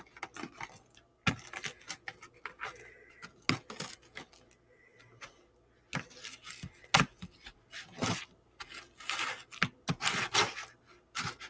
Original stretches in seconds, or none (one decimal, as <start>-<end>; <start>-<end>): 0.0-11.5